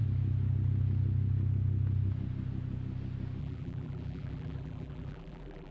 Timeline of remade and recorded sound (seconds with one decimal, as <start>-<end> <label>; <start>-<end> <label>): 0.0-3.4 recorded; 3.4-5.7 remade